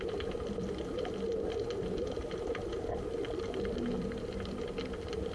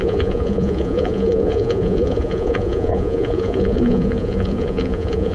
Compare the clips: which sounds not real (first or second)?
second